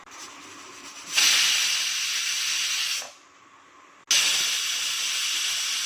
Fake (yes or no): no